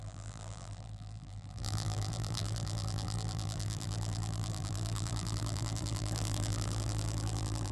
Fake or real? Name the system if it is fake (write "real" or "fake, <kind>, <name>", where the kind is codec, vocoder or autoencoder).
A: fake, vocoder, BigVGAN v2